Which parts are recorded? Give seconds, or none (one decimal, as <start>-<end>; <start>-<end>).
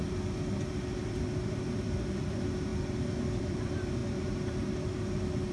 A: 0.0-0.5; 2.7-3.4; 4.0-5.5